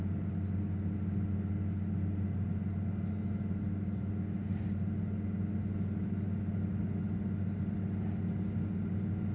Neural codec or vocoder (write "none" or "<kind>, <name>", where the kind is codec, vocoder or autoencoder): none